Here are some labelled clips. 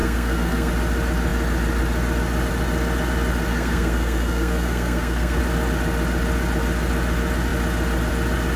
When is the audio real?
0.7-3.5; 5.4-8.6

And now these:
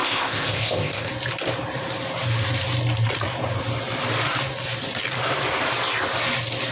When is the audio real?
1.1-6.7